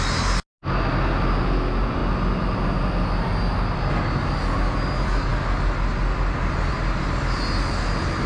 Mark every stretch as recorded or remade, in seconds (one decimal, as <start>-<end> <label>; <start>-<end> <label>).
0.0-8.3 recorded